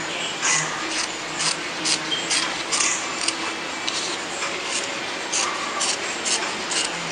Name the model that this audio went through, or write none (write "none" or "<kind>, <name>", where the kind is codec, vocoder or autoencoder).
none